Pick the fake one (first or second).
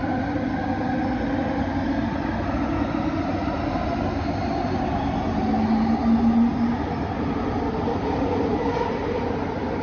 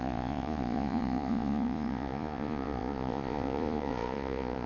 second